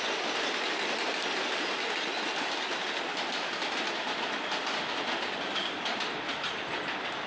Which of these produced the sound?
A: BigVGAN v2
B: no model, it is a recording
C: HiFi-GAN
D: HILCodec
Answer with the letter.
B